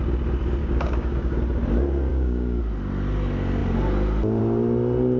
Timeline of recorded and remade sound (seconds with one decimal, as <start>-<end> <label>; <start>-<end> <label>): 0.0-0.6 recorded; 0.6-1.4 remade; 1.4-2.1 recorded; 2.1-2.6 remade; 2.6-5.2 recorded